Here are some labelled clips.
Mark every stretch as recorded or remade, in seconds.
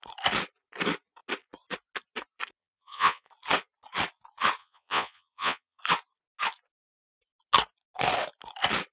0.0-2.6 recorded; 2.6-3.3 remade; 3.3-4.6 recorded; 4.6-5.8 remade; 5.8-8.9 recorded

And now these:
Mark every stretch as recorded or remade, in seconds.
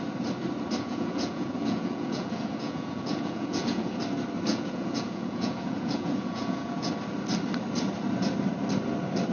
0.0-0.8 recorded; 0.8-4.0 remade; 4.0-4.5 recorded; 4.5-6.9 remade; 6.9-9.3 recorded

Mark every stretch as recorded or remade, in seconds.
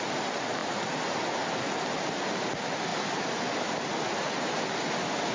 0.0-2.9 recorded; 2.9-3.9 remade; 3.9-5.3 recorded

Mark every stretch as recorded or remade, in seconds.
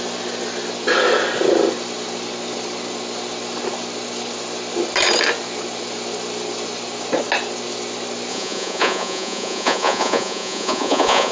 0.0-8.3 recorded; 8.3-11.3 remade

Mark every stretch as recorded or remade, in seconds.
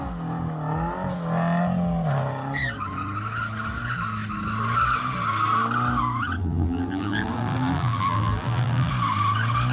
0.0-6.4 recorded; 6.4-8.9 remade; 8.9-9.7 recorded